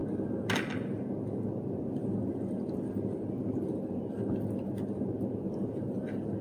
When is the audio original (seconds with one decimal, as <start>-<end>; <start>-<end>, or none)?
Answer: 0.0-6.4